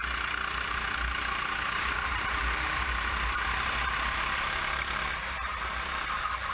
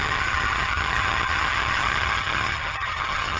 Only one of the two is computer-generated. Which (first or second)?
second